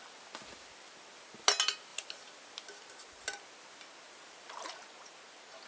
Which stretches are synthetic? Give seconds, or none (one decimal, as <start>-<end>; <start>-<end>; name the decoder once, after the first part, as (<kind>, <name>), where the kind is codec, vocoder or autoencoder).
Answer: none